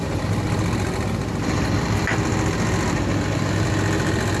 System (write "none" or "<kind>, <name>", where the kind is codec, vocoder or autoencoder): none